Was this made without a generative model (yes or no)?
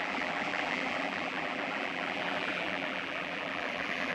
no